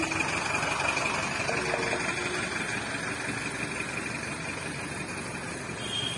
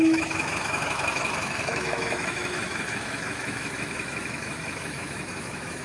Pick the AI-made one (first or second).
second